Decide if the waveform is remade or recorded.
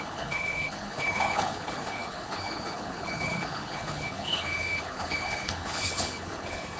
remade